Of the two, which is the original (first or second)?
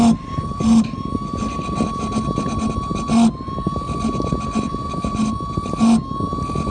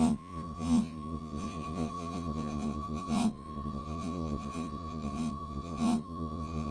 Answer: first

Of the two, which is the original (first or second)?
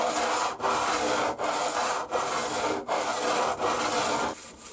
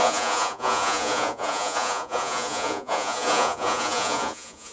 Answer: first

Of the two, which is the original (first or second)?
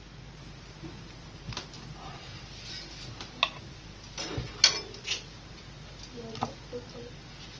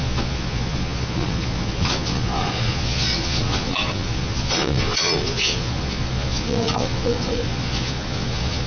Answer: first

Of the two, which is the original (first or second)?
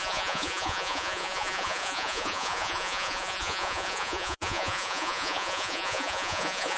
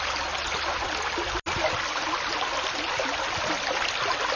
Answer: second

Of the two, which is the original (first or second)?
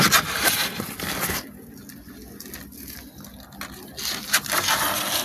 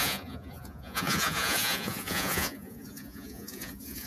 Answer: first